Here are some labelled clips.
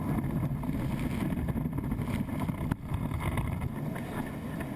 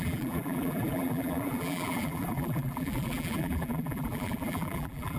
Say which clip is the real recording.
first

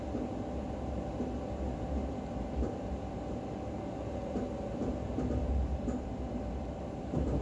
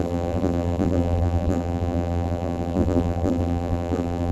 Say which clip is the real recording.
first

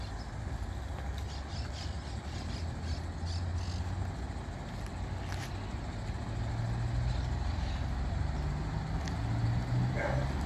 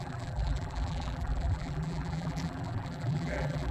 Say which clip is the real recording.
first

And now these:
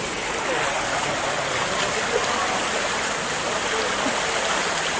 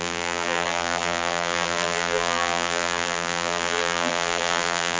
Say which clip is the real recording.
first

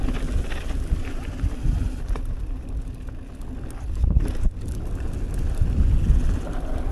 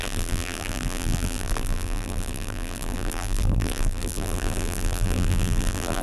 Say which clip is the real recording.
first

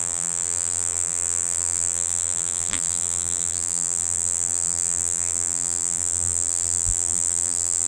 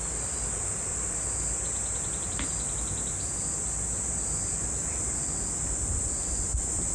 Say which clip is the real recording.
second